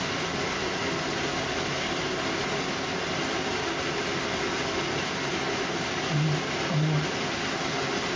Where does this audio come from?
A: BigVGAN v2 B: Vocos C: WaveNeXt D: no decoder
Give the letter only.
D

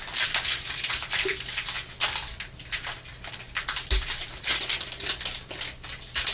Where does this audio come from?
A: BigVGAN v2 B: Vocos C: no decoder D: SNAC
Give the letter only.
A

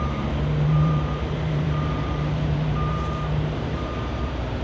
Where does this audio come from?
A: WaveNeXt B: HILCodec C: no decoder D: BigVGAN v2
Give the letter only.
D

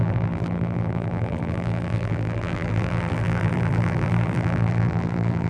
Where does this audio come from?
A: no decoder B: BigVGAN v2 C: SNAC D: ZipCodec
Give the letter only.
B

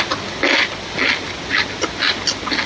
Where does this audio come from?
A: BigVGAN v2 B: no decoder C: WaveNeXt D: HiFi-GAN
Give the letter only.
B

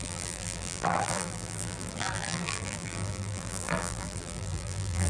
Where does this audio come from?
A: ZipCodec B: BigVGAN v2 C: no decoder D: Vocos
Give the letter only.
B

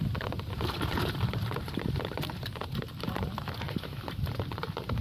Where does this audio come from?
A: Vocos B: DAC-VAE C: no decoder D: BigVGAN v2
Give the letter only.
D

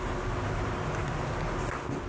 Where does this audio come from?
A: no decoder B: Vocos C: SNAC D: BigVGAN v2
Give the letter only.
A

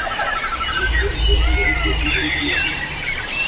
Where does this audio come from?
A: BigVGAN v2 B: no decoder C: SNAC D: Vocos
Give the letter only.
A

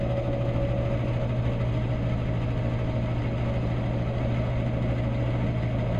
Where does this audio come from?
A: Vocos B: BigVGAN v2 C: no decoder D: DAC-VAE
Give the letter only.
C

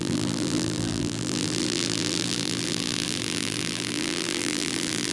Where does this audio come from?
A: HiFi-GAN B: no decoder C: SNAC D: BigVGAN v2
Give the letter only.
D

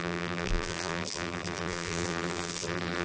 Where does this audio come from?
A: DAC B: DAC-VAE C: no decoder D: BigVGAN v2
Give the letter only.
D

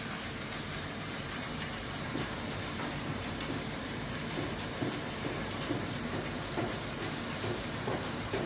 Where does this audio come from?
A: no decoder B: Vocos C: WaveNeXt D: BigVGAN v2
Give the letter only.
D